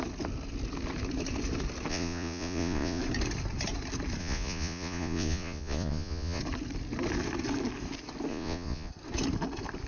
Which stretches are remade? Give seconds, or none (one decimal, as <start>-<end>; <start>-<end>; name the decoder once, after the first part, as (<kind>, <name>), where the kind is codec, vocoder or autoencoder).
1.9-3.0 (vocoder, Vocos); 4.2-6.4; 8.3-8.9